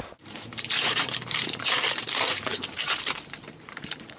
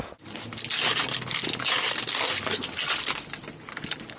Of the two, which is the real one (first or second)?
second